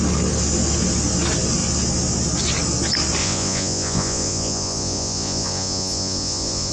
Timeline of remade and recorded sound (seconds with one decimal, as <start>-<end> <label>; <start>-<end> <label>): 0.0-3.2 recorded; 3.2-6.7 remade